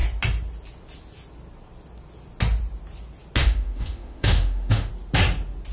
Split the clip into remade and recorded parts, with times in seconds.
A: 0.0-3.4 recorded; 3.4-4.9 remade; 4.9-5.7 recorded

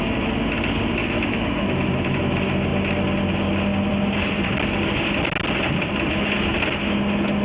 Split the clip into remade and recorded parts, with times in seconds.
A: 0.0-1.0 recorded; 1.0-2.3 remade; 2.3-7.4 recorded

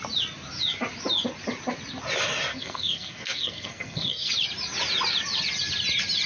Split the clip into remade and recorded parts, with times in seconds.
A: 0.0-2.5 recorded; 2.5-4.3 remade; 4.3-6.3 recorded

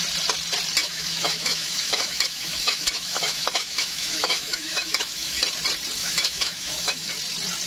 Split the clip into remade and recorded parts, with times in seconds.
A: 0.0-0.8 recorded; 0.8-5.4 remade; 5.4-6.0 recorded; 6.0-7.1 remade; 7.1-7.7 recorded

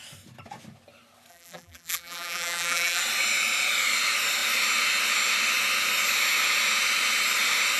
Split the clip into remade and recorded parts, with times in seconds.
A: 0.0-1.3 recorded; 1.3-3.0 remade; 3.0-7.8 recorded

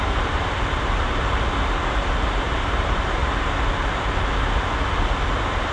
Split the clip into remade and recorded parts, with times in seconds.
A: 0.0-1.2 remade; 1.2-1.9 recorded; 1.9-3.2 remade; 3.2-5.2 recorded; 5.2-5.7 remade

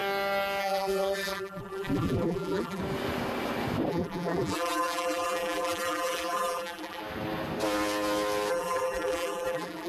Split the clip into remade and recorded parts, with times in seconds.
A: 0.0-0.6 recorded; 0.6-2.8 remade; 2.8-3.9 recorded; 3.9-7.0 remade; 7.0-8.5 recorded; 8.5-9.9 remade